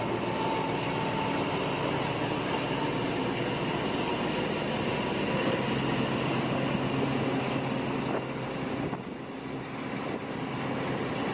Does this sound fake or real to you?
real